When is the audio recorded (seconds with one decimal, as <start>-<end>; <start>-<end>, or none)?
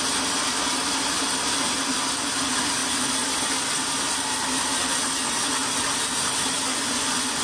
0.0-6.7